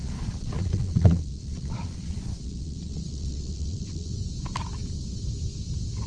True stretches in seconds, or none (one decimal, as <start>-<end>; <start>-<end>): 4.1-6.1